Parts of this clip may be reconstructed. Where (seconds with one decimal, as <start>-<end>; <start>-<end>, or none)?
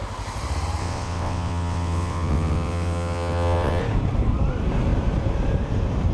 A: 0.8-3.8